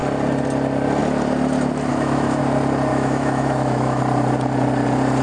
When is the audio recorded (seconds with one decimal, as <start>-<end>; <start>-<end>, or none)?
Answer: 0.0-1.9; 2.4-2.9; 4.0-5.2